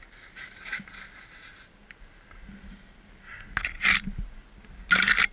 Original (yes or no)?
yes